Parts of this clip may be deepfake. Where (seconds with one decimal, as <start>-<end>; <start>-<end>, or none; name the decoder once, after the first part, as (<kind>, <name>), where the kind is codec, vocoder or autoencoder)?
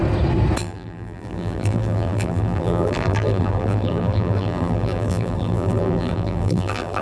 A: 0.6-7.0 (vocoder, BigVGAN v2)